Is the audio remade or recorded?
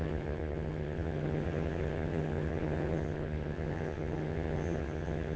remade